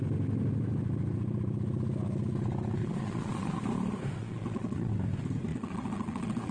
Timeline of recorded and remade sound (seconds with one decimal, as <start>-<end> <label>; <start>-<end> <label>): 0.0-2.8 recorded; 2.8-3.6 remade; 3.6-4.2 recorded; 4.2-4.9 remade; 4.9-5.5 recorded; 5.5-6.5 remade